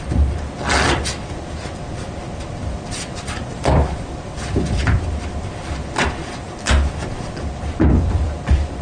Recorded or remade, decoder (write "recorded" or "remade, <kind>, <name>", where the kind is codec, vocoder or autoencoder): remade, vocoder, BigVGAN v2